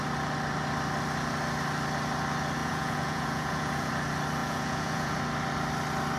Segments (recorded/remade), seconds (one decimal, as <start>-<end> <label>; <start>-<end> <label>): 0.0-2.6 recorded; 2.6-3.9 remade; 3.9-4.4 recorded; 4.4-5.2 remade; 5.2-6.2 recorded